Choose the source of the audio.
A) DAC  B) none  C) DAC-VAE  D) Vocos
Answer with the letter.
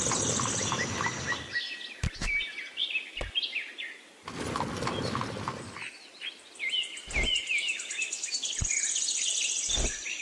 B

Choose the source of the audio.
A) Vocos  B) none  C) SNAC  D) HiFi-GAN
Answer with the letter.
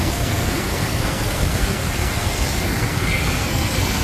C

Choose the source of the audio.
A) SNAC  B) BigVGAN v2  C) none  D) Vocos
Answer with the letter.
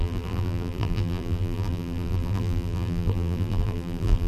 B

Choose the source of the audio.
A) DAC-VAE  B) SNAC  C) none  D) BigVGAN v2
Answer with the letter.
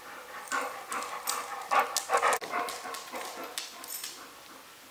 C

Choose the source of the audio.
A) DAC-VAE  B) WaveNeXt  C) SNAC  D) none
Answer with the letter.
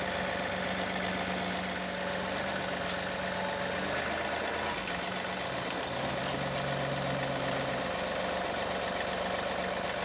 D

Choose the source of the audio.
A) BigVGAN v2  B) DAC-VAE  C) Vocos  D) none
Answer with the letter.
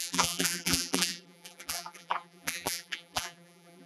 A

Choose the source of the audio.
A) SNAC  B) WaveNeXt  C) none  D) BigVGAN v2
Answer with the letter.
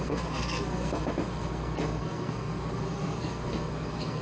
A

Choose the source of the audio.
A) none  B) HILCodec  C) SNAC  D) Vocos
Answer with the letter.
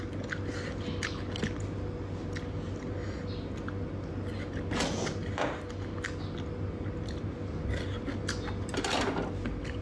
A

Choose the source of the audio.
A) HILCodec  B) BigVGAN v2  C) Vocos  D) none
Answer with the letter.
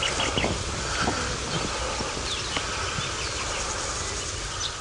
D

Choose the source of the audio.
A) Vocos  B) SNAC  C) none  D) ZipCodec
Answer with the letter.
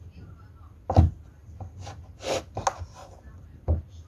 C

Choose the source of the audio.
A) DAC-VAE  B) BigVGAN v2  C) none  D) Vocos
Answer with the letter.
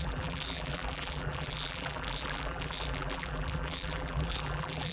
B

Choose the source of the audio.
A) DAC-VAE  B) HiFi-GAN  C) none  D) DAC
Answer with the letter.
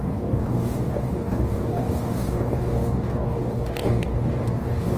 D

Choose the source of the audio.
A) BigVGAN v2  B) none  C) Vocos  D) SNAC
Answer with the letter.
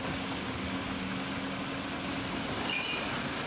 B